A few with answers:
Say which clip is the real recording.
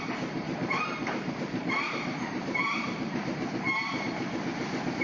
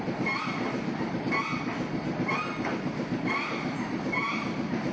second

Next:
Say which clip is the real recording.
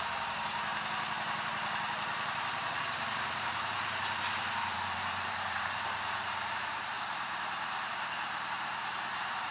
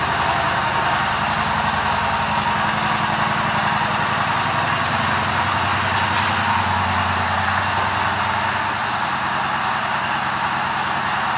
second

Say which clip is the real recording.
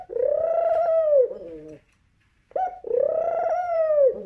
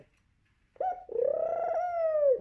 second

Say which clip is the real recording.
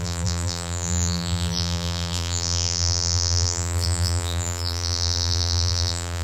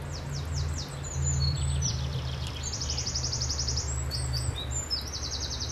second